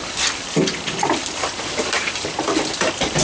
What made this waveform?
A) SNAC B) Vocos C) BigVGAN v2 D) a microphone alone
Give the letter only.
C